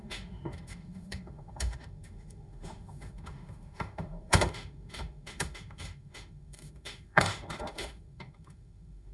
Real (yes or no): no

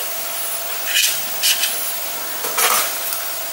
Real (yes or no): yes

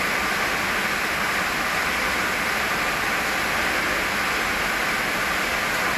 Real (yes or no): yes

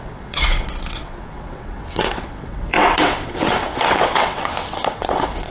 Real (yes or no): no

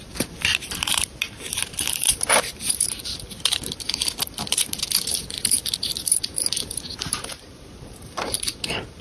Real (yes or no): no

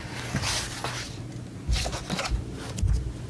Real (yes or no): yes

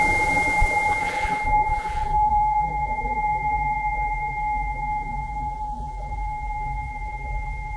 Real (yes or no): no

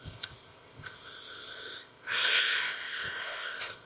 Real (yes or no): no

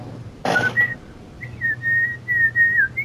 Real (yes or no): yes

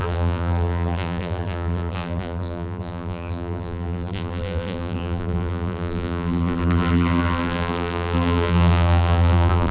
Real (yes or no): no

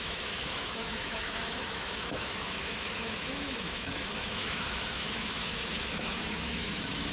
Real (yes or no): no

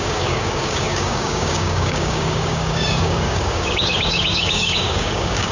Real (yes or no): no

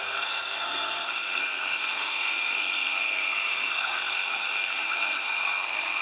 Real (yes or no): no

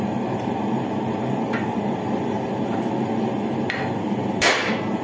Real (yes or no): yes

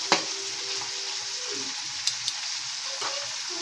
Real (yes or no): no